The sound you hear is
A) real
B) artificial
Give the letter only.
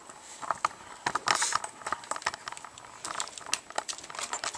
A